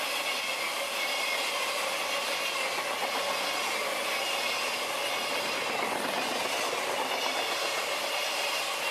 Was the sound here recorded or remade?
recorded